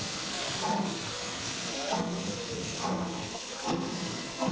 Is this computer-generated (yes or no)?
yes